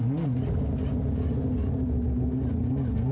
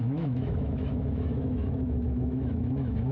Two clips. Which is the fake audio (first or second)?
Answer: second